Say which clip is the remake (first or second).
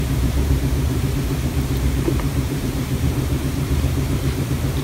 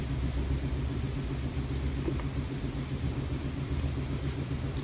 first